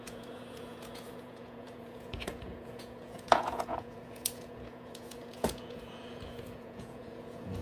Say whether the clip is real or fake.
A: fake